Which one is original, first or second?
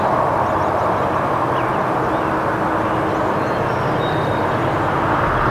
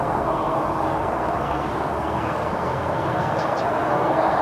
first